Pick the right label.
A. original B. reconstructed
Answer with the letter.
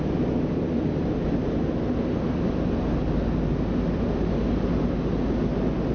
A